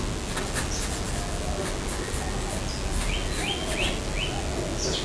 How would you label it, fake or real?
real